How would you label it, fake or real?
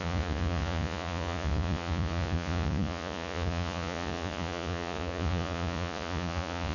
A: fake